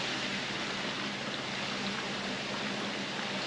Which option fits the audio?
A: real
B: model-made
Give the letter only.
A